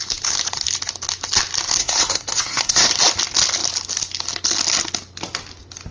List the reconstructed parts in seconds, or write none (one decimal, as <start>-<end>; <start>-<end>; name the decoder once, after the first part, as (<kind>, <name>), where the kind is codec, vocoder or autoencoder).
1.8-2.9 (codec, SNAC)